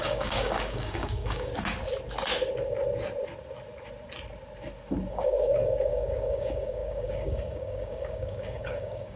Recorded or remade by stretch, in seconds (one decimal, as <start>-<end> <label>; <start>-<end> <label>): 0.0-1.5 remade; 1.5-5.1 recorded; 5.1-9.2 remade